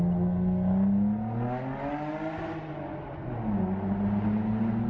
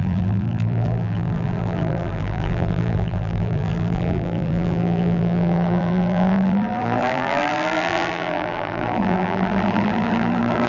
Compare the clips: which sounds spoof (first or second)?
second